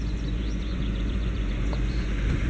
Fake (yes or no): yes